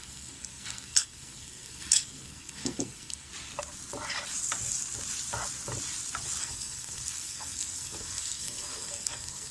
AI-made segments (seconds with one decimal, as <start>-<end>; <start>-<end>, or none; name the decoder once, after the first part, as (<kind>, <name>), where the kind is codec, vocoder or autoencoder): 0.0-3.3 (codec, SNAC); 6.4-9.5